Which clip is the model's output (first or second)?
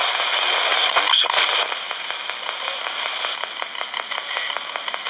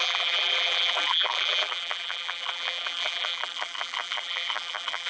second